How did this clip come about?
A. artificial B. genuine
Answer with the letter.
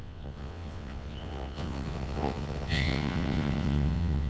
A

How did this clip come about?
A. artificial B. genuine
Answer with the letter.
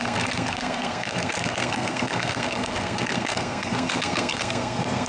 A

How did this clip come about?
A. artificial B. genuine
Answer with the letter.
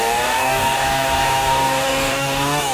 A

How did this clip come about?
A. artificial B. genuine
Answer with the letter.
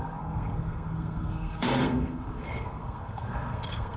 A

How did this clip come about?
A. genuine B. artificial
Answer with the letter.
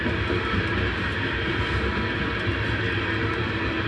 A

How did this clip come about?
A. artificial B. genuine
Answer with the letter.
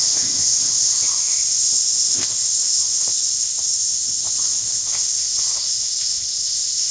A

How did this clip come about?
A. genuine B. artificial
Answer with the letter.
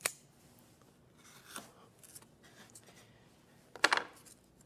A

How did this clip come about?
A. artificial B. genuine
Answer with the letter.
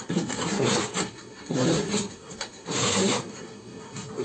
A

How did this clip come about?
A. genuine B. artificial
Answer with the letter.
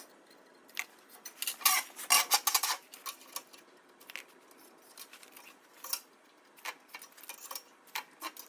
A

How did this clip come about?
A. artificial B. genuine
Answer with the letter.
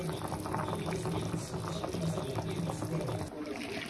B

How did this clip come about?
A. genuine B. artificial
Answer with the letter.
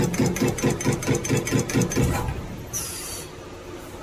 A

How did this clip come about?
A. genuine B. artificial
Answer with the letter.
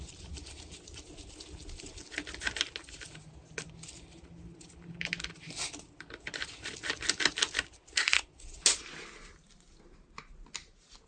A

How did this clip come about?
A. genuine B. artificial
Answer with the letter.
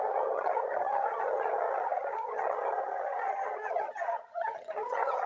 B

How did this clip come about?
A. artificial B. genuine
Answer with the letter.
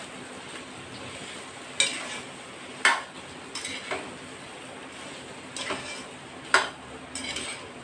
B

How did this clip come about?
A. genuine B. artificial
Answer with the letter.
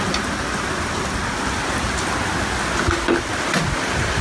A